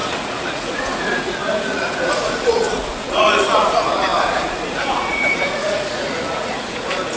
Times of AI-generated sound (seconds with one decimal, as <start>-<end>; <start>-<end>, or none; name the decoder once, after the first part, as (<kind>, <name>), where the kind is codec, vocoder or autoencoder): 0.0-7.2 (vocoder, Vocos)